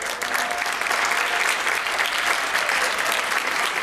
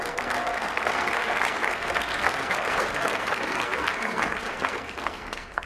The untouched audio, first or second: first